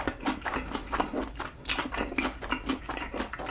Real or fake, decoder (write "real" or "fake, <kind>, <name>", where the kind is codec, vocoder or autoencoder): real